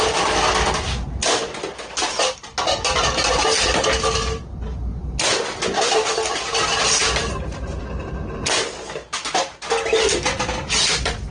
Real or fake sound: real